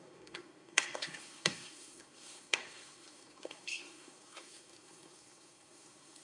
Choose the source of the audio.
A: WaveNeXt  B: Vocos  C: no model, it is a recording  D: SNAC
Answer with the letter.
D